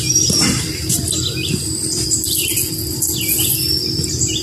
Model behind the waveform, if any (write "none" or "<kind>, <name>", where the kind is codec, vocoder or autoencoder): none